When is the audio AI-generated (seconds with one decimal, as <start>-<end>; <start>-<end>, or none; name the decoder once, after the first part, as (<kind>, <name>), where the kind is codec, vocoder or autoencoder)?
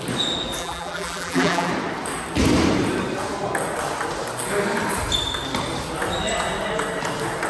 0.6-1.7 (vocoder, BigVGAN v2)